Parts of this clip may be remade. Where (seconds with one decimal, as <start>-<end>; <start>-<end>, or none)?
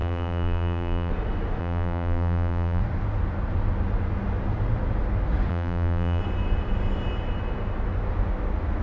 0.0-1.1; 1.6-2.8; 5.5-6.2